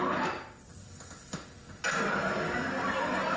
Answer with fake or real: real